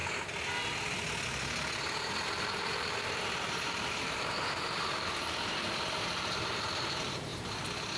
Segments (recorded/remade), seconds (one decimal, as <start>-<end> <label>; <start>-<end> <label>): 0.0-2.4 recorded; 2.4-8.0 remade